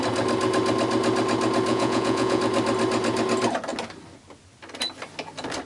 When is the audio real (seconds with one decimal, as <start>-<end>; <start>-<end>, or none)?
0.0-1.7; 2.4-5.7